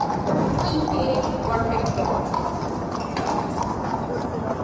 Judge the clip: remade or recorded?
recorded